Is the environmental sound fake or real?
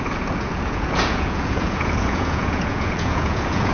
fake